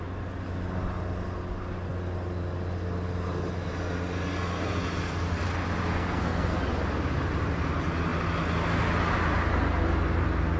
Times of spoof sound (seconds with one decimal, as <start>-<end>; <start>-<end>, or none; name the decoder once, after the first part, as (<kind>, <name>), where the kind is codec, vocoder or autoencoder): 5.9-6.6 (codec, SNAC)